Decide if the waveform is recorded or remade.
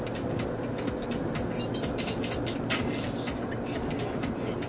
recorded